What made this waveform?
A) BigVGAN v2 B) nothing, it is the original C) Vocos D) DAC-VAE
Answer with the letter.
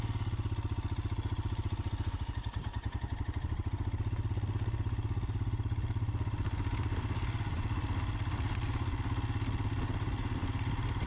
B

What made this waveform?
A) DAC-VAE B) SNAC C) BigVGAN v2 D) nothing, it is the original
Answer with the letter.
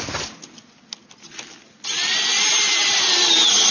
D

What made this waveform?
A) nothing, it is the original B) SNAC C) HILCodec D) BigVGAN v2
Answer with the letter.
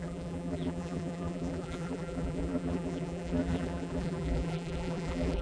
D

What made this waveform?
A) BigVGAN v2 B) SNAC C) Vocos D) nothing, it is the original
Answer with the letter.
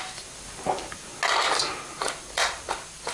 D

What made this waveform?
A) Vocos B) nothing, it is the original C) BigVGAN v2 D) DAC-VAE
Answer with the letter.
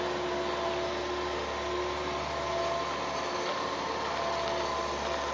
B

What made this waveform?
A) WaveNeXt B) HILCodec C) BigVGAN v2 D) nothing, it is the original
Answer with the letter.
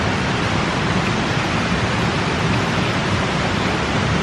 C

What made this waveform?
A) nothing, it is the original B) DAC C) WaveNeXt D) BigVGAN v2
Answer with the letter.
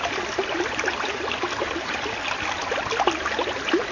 A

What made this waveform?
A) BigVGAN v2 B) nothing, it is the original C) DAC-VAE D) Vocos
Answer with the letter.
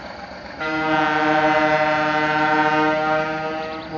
B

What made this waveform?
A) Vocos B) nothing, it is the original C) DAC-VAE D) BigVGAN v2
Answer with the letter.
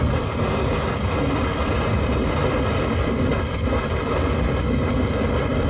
B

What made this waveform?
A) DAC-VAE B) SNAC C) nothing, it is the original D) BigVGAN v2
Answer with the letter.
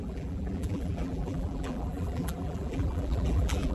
D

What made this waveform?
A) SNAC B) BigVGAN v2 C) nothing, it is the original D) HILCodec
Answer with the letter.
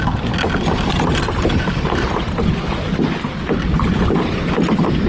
C